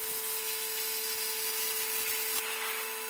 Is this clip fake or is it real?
real